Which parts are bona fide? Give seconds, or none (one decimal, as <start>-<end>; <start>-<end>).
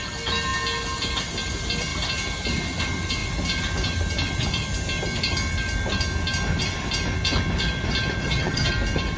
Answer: 0.0-8.2; 8.7-9.2